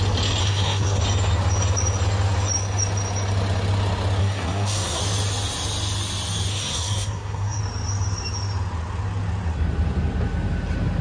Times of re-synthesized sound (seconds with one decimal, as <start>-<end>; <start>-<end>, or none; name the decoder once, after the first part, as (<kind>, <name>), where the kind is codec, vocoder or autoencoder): 0.4-1.0 (codec, SNAC); 4.2-5.0; 6.5-7.6